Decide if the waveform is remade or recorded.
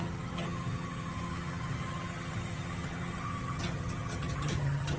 remade